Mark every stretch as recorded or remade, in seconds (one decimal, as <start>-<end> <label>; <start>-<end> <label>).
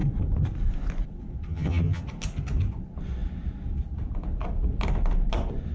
0.0-1.5 recorded; 1.5-2.0 remade; 2.0-5.7 recorded